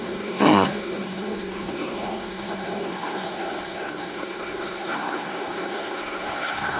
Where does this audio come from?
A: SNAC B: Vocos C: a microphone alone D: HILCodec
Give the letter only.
A